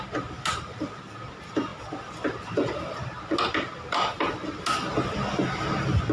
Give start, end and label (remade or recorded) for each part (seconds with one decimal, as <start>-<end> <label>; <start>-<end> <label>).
0.0-6.1 recorded

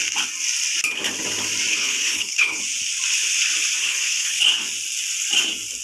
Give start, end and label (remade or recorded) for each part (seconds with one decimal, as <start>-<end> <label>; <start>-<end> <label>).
0.0-1.8 recorded; 1.8-2.6 remade; 2.6-3.8 recorded; 3.8-4.4 remade; 4.4-5.8 recorded

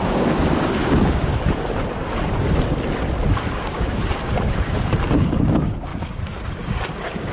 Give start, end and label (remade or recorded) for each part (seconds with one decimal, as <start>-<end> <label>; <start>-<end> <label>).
0.0-1.3 remade; 1.3-3.5 recorded; 3.5-7.3 remade

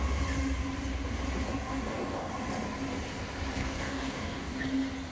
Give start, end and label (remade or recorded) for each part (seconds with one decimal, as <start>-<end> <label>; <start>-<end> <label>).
0.0-1.7 recorded; 1.7-2.3 remade; 2.3-3.6 recorded; 3.6-4.6 remade; 4.6-5.1 recorded